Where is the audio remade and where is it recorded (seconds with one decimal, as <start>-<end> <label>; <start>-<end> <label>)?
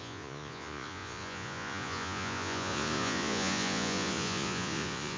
0.0-5.2 remade